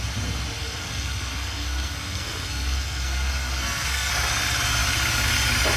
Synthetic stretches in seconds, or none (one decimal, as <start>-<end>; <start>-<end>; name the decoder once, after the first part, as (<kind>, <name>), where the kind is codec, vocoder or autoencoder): 0.6-4.1 (codec, SNAC)